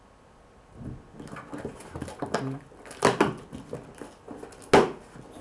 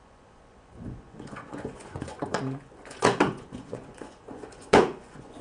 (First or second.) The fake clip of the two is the second